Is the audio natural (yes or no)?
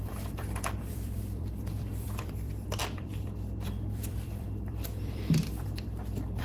no